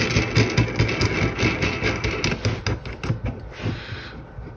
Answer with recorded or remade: recorded